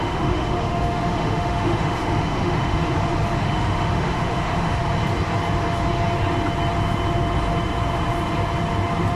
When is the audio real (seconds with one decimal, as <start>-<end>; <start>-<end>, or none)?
2.8-3.4; 4.8-9.1